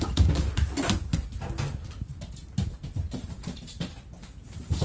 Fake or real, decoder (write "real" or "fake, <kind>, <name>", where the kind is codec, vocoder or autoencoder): real